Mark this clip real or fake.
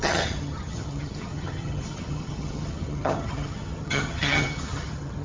fake